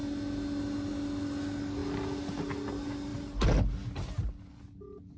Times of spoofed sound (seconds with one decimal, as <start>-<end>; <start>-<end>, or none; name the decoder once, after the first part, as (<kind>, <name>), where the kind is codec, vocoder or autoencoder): none